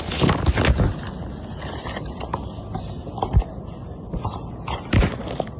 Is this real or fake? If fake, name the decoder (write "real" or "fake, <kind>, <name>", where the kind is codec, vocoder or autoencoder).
real